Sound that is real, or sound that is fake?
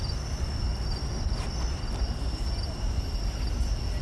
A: real